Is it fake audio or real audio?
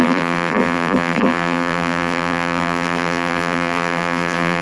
fake